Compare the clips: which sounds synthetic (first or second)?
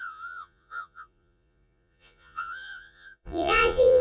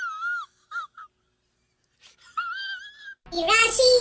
first